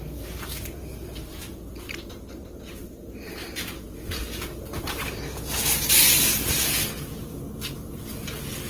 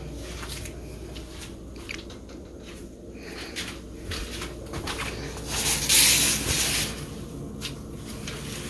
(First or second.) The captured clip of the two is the second